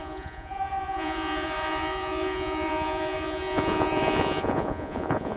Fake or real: fake